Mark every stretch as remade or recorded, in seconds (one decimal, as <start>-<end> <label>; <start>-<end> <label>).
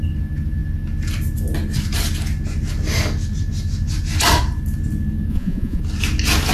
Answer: 0.0-5.3 recorded; 5.3-5.8 remade; 5.8-6.5 recorded